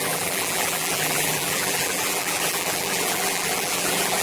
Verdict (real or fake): fake